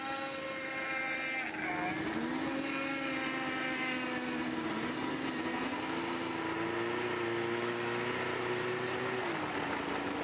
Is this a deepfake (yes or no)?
no